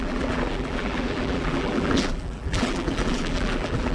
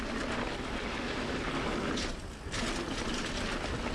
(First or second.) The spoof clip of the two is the first